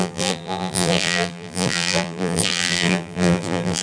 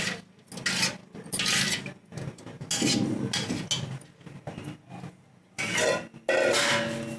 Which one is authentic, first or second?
second